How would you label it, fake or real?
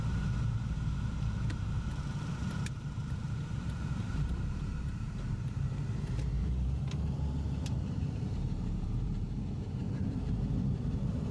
fake